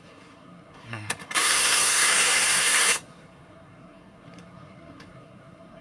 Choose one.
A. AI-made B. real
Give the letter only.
A